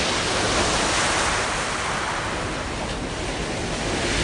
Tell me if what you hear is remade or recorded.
recorded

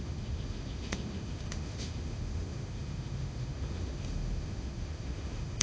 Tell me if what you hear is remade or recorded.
remade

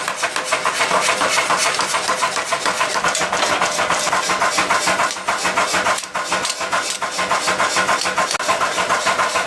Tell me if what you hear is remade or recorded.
recorded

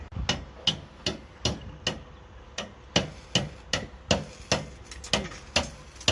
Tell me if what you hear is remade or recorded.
recorded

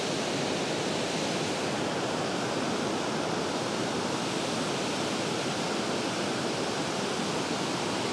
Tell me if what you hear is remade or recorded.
recorded